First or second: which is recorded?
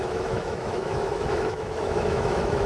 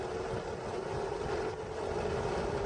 second